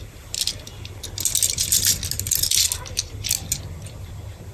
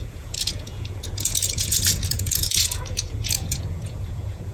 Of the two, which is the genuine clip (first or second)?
first